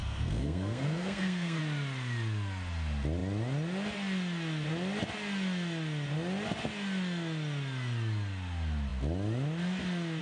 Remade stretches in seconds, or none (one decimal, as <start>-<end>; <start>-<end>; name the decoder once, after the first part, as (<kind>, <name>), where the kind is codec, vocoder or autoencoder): 0.0-1.6 (codec, SNAC)